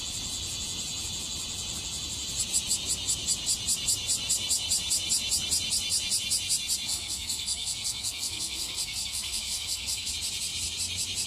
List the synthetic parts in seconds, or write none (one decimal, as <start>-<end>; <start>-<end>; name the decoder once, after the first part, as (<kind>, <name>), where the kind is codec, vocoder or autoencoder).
6.9-10.1 (codec, SNAC)

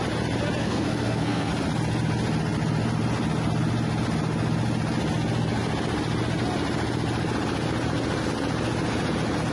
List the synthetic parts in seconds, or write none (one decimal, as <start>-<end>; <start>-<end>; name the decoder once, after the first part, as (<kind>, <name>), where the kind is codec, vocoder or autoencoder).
0.6-1.5 (codec, SNAC)

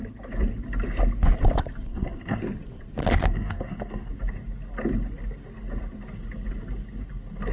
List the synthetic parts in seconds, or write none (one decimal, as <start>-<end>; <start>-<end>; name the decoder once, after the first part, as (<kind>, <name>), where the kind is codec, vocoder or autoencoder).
1.9-2.4 (codec, SNAC); 3.2-4.1